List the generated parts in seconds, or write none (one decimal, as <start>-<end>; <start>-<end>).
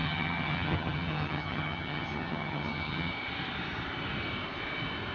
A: 0.0-3.1